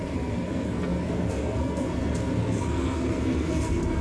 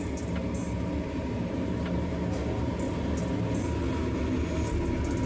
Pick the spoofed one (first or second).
first